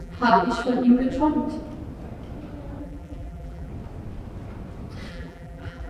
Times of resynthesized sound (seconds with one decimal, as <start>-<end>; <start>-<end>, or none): 0.0-1.3; 2.8-3.7; 5.1-5.9